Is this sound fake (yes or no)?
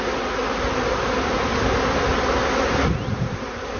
no